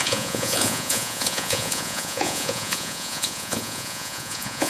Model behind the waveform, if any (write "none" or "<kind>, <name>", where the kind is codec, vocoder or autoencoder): vocoder, Vocos